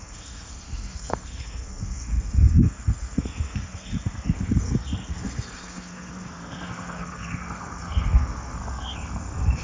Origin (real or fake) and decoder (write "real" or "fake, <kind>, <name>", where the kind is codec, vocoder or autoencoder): fake, codec, SNAC